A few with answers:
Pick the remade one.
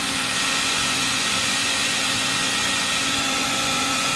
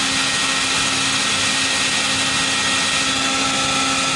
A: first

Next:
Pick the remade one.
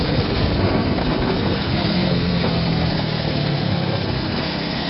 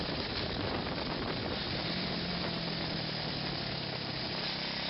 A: first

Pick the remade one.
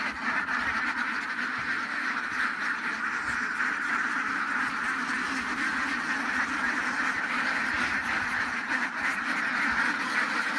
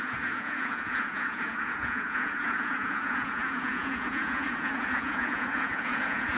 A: second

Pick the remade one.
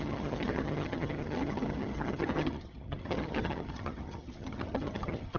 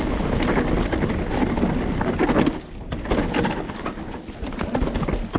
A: first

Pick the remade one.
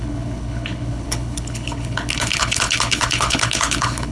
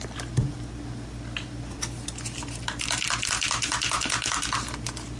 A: first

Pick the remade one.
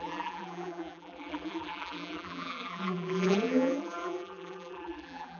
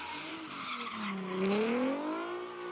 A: first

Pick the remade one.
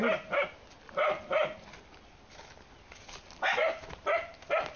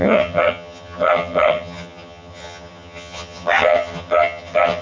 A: second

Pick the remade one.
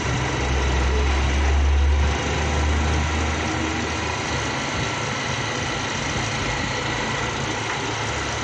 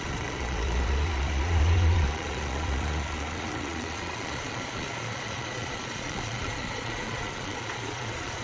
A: second